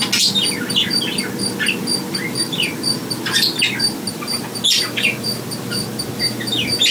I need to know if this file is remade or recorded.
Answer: recorded